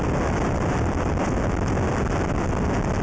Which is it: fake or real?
real